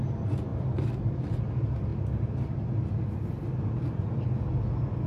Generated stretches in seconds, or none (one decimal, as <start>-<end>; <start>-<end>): 0.5-1.4